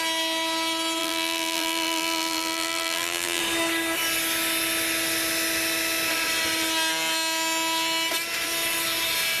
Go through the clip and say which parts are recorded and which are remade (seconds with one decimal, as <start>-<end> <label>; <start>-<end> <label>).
0.0-1.0 recorded; 1.0-3.4 remade; 3.4-9.4 recorded